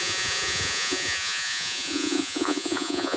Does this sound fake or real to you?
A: fake